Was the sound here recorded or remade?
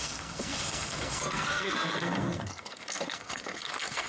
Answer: remade